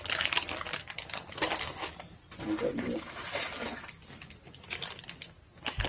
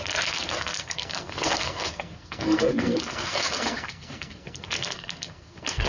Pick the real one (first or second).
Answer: first